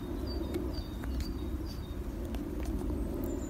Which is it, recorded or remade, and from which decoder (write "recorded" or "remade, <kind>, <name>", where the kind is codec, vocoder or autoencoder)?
recorded